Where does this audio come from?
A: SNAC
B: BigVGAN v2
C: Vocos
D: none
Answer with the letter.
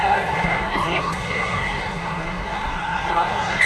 A